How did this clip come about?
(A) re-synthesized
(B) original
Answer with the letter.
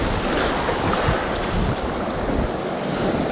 B